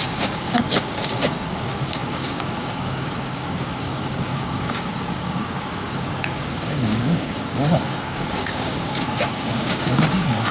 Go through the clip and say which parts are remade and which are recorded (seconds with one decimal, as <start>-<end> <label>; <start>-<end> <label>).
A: 0.0-10.5 remade